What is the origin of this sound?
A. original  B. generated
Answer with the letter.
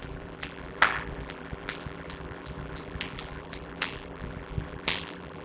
B